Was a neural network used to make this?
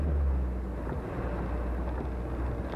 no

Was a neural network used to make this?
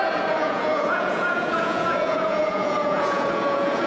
yes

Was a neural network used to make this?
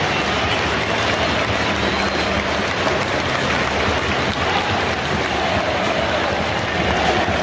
no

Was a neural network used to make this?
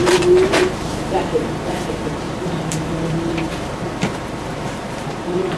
yes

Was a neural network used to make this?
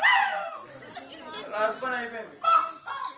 no